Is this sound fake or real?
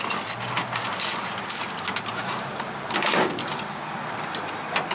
real